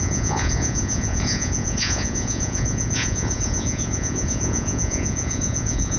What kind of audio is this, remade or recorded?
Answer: remade